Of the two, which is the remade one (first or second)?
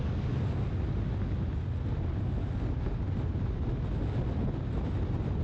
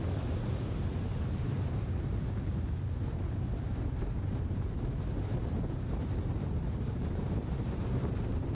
second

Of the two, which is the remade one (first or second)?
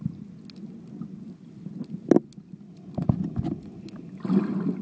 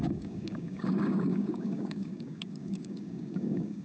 second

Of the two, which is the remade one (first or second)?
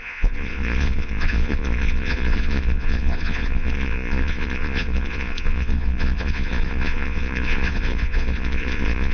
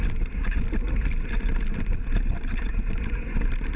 first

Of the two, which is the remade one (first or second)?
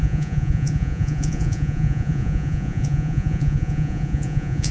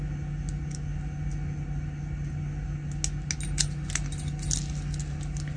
first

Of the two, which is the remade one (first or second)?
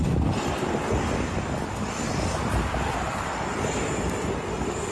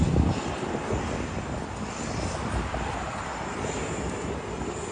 first